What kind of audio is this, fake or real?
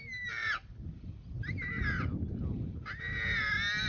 real